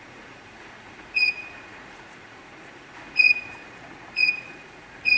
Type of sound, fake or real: fake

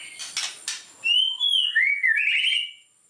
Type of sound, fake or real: real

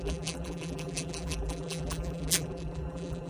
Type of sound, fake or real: fake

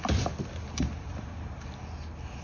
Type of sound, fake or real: real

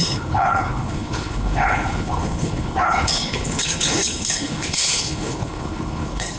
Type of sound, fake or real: fake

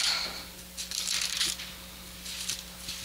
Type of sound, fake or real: real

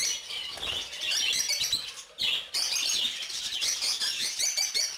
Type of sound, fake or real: real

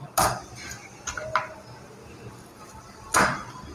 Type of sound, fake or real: real